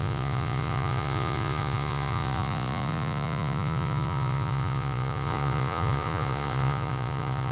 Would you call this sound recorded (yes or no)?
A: no